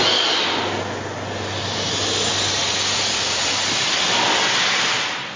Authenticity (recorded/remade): recorded